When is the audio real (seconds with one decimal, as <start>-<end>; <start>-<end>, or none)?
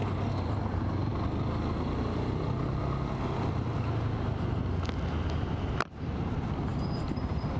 0.0-7.6